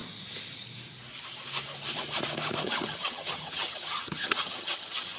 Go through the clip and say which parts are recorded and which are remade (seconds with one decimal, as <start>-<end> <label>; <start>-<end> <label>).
0.0-2.6 recorded; 2.6-5.2 remade

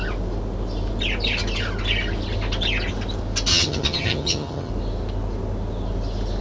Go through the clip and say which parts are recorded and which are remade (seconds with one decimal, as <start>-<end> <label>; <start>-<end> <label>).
0.0-3.5 recorded; 3.5-4.7 remade; 4.7-6.4 recorded

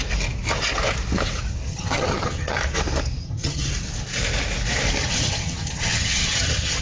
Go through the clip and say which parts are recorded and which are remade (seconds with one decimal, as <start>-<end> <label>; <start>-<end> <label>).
0.0-1.7 recorded; 1.7-2.6 remade; 2.6-3.2 recorded; 3.2-3.7 remade; 3.7-5.0 recorded; 5.0-6.8 remade

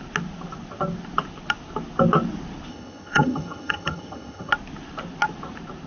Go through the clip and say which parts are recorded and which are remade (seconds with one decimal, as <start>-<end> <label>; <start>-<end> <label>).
0.0-2.7 recorded; 2.7-4.5 remade; 4.5-5.9 recorded